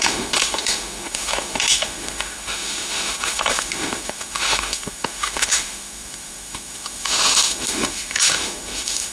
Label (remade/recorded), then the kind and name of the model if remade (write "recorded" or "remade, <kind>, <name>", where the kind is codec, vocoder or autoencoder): remade, autoencoder, DAC-VAE